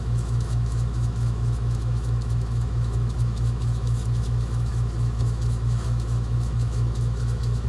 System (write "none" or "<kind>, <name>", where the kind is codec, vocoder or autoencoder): autoencoder, DAC-VAE